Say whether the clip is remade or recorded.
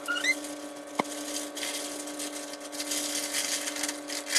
recorded